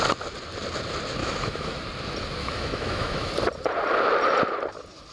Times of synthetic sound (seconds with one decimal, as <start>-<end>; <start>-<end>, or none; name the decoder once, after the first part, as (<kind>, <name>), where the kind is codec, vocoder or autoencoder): 1.2-1.8 (autoencoder, DAC-VAE); 2.4-3.3